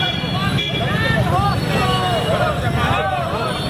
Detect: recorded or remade recorded